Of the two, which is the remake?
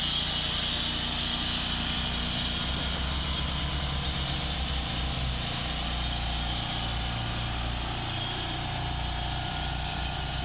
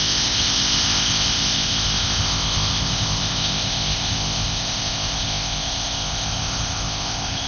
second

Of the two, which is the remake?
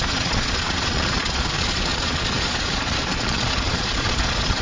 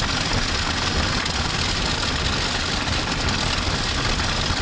first